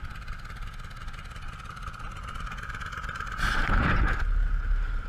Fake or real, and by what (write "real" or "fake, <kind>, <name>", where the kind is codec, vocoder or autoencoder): real